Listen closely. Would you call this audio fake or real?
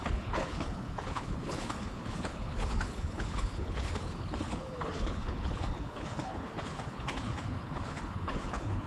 fake